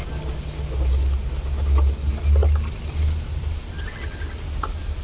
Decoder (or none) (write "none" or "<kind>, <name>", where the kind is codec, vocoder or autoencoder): none